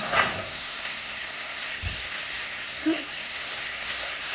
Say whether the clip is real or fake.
fake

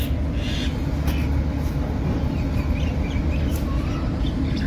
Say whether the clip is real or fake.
real